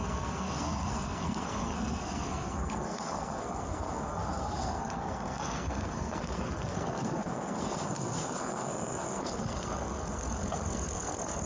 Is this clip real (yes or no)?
no